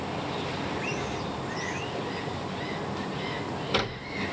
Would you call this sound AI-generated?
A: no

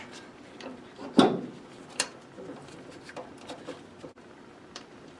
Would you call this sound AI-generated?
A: yes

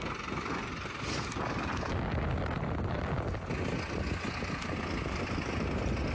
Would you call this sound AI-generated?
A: no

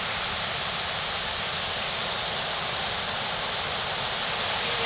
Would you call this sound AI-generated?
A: no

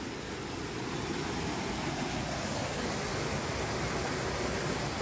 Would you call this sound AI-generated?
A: no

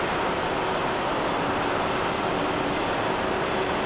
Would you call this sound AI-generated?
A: no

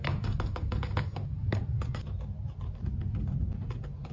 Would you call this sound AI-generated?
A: no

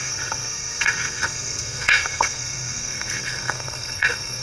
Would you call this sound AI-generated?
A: yes